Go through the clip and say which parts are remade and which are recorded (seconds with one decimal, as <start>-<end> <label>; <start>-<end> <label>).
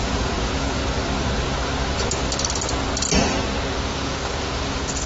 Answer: 0.0-0.8 remade; 0.8-3.9 recorded; 3.9-5.1 remade